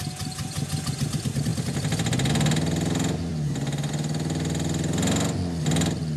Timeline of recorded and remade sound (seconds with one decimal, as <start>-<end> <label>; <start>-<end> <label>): 0.0-6.2 recorded